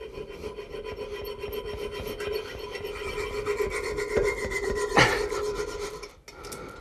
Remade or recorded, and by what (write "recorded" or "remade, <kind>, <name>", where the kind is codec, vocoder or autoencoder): recorded